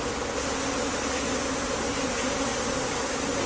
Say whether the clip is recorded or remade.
recorded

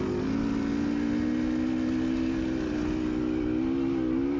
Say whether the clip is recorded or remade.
recorded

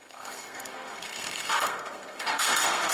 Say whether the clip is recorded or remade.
remade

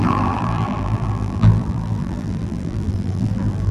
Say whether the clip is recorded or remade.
remade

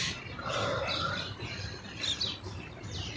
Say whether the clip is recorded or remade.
recorded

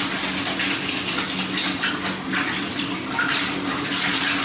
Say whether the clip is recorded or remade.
recorded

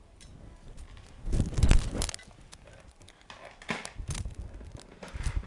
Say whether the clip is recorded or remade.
recorded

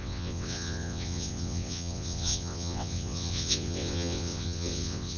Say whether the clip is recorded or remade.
remade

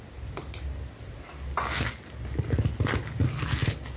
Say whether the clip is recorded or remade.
recorded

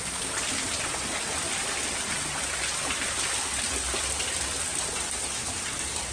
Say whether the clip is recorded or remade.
recorded